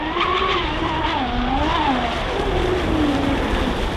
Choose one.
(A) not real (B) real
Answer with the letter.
B